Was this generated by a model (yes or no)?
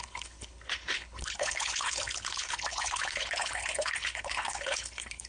yes